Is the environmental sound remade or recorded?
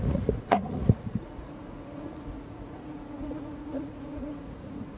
remade